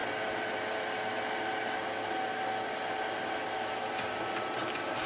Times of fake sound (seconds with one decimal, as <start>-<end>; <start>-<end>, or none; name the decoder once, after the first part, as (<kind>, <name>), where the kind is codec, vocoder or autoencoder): none